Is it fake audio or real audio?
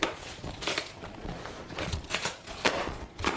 fake